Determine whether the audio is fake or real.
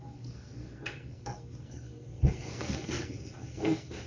fake